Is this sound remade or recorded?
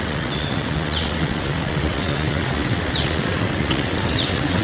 remade